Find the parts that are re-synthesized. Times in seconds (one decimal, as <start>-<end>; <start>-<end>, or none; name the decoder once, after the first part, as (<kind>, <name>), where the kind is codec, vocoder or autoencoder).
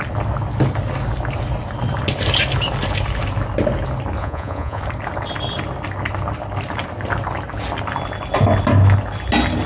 4.2-4.8 (vocoder, Vocos)